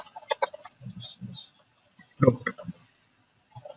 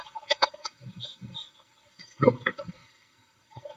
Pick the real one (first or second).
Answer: first